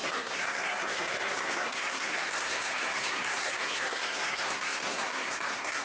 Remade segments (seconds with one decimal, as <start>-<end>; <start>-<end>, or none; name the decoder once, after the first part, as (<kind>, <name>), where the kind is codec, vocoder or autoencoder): 0.0-5.8 (codec, SNAC)